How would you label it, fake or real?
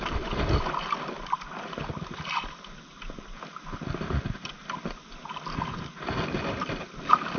real